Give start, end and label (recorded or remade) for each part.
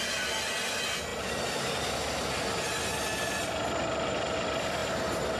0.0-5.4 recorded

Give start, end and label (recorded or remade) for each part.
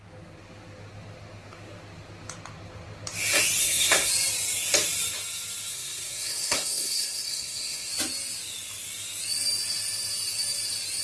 0.0-3.6 recorded; 3.6-4.1 remade; 4.1-5.7 recorded; 5.7-7.9 remade; 7.9-11.0 recorded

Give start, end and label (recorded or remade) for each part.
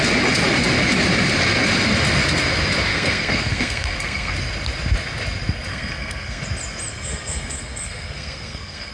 0.0-2.9 recorded; 2.9-4.3 remade; 4.3-5.7 recorded; 5.7-6.4 remade; 6.4-6.9 recorded; 6.9-8.9 remade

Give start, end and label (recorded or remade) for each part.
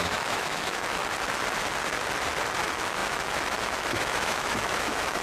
0.0-1.0 remade; 1.0-2.6 recorded; 2.6-5.2 remade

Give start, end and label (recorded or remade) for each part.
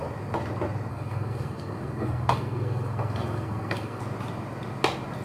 0.0-0.9 recorded; 0.9-4.0 remade; 4.0-5.2 recorded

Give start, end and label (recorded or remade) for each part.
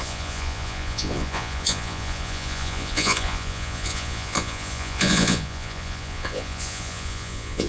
0.0-7.7 remade